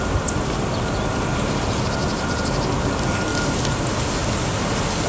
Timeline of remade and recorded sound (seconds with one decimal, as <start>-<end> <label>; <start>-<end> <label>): 0.0-2.0 recorded; 2.0-2.7 remade; 2.7-3.3 recorded; 3.3-3.8 remade; 3.8-5.1 recorded